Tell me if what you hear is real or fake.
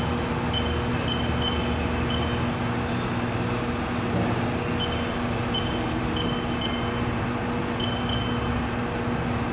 real